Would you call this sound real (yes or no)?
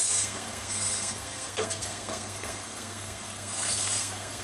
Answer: no